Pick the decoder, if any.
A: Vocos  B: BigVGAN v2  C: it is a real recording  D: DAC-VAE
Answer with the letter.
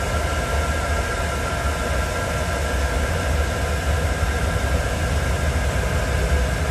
C